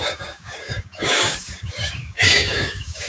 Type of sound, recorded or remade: remade